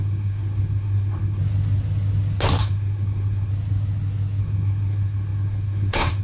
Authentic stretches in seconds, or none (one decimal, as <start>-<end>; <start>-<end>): 1.4-2.6; 3.5-4.4